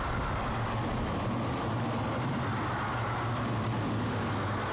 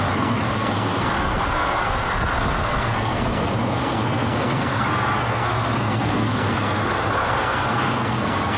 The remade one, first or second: second